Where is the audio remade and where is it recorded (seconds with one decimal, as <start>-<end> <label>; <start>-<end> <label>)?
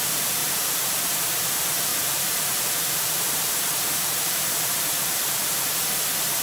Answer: 0.0-0.4 recorded; 0.4-1.3 remade; 1.3-1.9 recorded; 1.9-5.7 remade; 5.7-6.4 recorded